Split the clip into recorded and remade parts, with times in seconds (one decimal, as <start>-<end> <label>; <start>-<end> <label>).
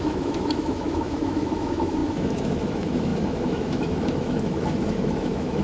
0.0-5.6 remade